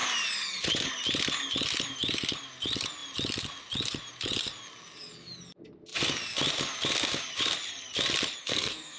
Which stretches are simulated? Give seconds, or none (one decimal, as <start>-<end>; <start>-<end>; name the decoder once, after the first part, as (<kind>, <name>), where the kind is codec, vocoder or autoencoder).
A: 8.4-9.0 (codec, SNAC)